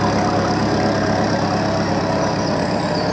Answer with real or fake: fake